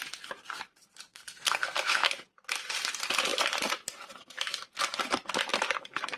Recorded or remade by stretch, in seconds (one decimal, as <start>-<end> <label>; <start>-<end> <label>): 0.0-1.1 recorded; 1.1-2.1 remade; 2.1-6.2 recorded